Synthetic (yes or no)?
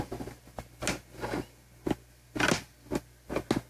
no